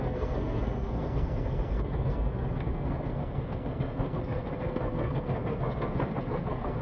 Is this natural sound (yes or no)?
no